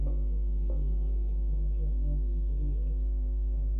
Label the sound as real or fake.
fake